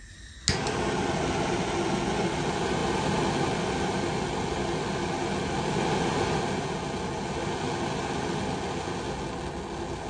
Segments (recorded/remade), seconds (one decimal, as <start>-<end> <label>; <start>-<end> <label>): 0.0-10.1 recorded